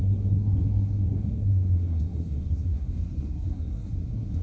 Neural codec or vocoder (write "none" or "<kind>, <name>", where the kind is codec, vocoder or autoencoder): codec, SNAC